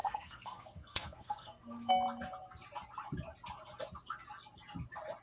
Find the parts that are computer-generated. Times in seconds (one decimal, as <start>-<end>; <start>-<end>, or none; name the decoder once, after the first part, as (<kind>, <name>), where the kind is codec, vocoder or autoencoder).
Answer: 0.0-1.9 (codec, SNAC)